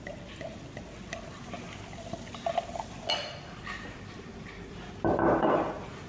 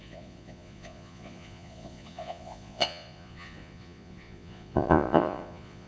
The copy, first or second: second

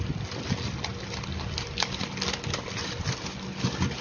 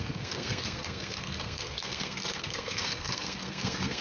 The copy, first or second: second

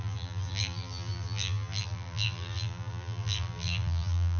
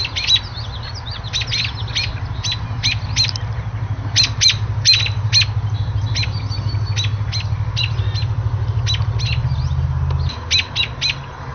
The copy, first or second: first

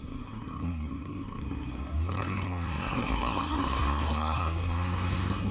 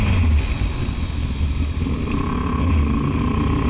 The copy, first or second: first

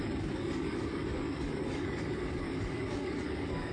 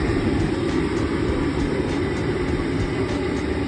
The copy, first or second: first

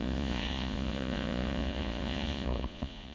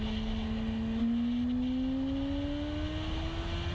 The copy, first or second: first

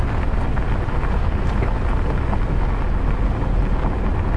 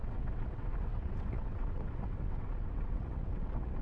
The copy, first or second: second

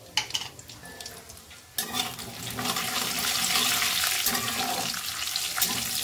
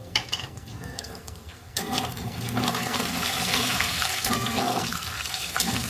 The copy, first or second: second